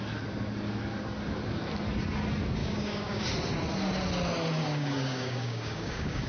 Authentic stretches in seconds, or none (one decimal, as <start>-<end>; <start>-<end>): 0.0-2.6; 3.2-4.6